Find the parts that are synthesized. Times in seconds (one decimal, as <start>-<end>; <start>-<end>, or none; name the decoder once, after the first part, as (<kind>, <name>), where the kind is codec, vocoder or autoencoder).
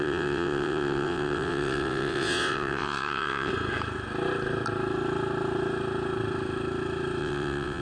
0.0-3.5 (vocoder, WaveNeXt); 7.2-7.8